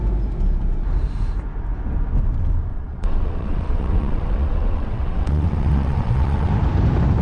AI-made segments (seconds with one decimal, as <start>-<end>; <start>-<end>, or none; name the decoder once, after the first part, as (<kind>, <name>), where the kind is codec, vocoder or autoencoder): 2.7-6.5 (vocoder, WaveNeXt)